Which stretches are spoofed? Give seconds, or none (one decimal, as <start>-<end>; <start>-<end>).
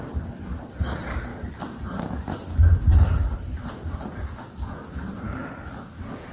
none